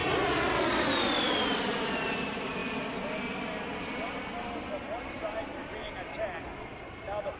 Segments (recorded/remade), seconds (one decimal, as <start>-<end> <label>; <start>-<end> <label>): 0.0-7.4 recorded